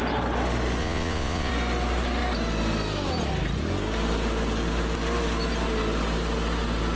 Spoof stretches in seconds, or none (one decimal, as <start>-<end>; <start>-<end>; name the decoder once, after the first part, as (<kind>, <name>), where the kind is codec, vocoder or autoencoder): 0.8-1.5 (vocoder, Vocos)